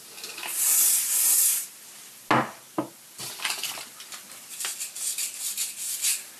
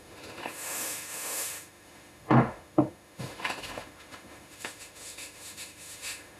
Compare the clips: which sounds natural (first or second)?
first